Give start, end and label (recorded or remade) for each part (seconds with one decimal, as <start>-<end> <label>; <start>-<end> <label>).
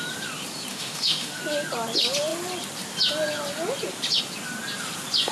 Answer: 0.0-0.7 recorded; 0.7-1.4 remade; 1.4-5.3 recorded